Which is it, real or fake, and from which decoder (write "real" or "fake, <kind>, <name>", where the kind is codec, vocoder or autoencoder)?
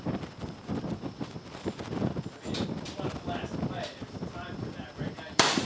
fake, vocoder, BigVGAN v2